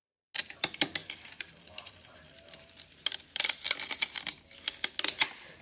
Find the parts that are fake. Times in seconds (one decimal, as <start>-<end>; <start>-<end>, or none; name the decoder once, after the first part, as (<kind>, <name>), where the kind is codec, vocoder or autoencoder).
1.0-4.4 (vocoder, BigVGAN v2)